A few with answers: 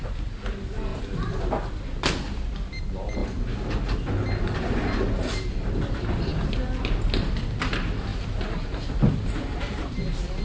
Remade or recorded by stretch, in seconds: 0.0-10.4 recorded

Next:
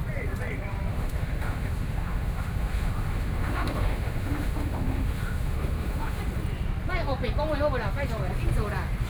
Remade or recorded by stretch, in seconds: 0.0-0.9 recorded; 0.9-6.2 remade; 6.2-9.1 recorded

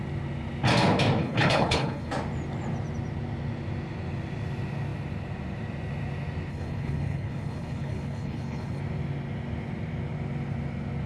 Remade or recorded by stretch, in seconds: 0.0-1.2 recorded; 1.2-2.1 remade; 2.1-6.5 recorded; 6.5-8.8 remade; 8.8-11.1 recorded

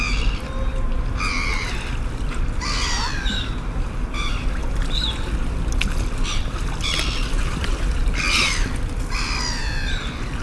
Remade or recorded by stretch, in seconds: 0.0-10.4 recorded

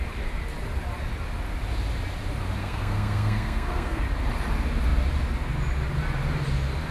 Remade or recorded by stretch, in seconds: 0.0-2.6 recorded; 2.6-4.0 remade; 4.0-6.9 recorded

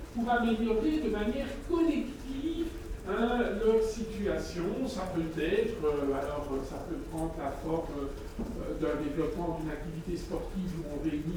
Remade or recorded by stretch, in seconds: 0.0-6.8 remade; 6.8-7.8 recorded; 7.8-8.3 remade; 8.3-10.0 recorded; 10.0-11.4 remade